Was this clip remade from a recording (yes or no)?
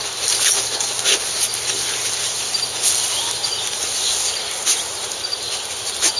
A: no